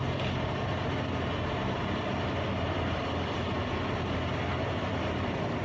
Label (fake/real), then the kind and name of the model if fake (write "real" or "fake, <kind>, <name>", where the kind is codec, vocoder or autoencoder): real